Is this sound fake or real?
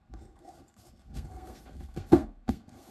fake